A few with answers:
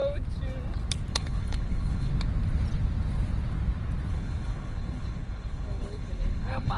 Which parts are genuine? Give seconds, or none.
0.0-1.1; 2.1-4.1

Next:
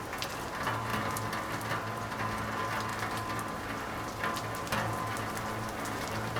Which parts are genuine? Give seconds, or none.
0.0-6.4